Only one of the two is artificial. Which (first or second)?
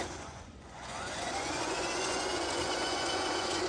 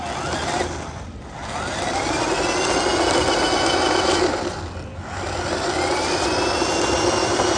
first